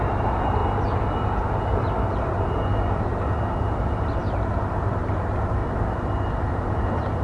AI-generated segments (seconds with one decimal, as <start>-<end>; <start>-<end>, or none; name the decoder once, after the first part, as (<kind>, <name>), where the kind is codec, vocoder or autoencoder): 0.0-0.6 (vocoder, BigVGAN v2); 1.5-5.6; 6.5-7.2